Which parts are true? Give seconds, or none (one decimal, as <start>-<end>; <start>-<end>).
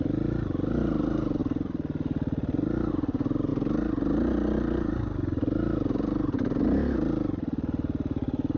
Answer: 0.0-8.6